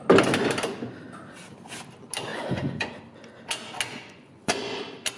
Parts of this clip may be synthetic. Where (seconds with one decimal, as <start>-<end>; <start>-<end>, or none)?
2.3-2.9; 3.9-4.8